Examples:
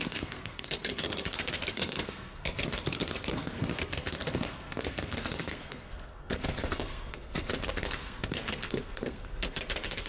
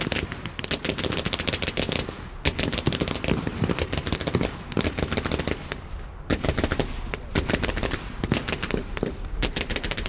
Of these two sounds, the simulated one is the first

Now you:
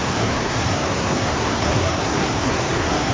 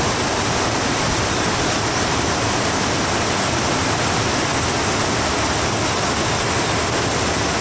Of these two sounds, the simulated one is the first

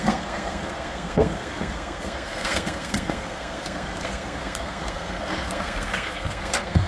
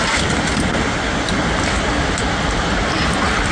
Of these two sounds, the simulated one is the first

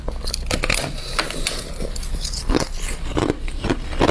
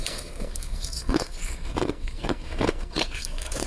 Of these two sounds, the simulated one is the second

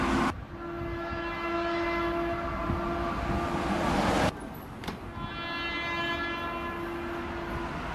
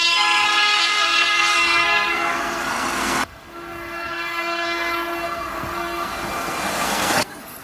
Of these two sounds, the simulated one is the second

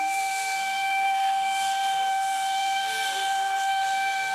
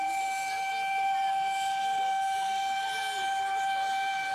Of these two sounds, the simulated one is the first